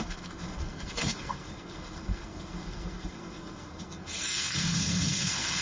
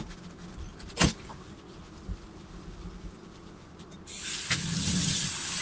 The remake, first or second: first